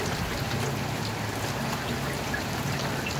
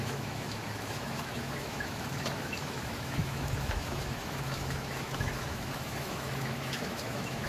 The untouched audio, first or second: first